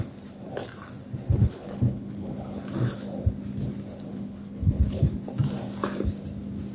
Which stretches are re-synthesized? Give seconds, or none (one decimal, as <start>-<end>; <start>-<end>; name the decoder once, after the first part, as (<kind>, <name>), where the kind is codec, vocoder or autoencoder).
1.4-2.6 (codec, HILCodec); 4.1-5.1